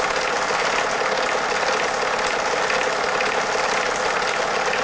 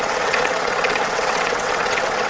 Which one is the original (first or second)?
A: first